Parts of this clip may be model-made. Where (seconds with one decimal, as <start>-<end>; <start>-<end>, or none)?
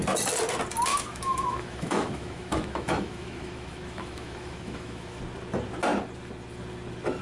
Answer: 0.9-5.2